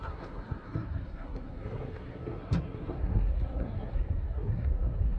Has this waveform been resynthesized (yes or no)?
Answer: yes